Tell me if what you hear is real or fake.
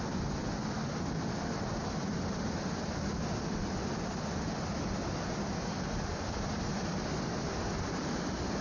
real